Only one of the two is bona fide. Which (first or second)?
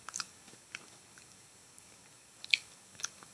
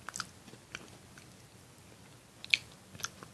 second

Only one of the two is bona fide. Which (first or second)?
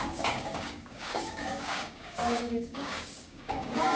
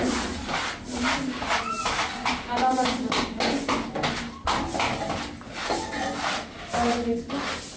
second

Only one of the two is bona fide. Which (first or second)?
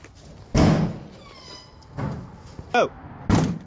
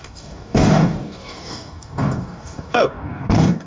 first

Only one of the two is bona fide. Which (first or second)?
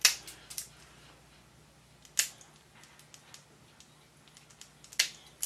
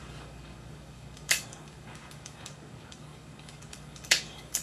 first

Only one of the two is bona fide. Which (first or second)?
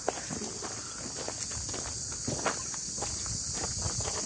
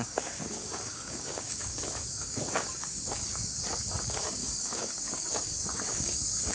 first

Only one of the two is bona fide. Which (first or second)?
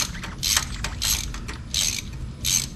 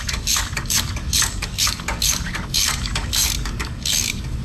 first